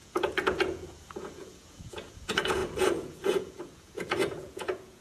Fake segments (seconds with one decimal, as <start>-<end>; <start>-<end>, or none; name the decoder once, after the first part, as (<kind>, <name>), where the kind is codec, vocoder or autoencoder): 0.0-5.0 (vocoder, Vocos)